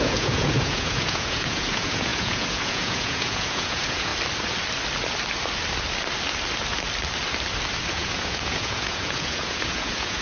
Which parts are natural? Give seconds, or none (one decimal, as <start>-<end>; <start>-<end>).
4.1-7.9